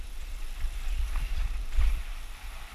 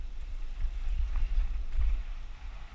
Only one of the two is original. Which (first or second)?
second